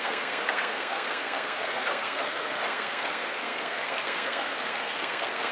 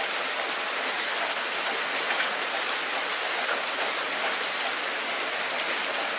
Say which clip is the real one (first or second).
second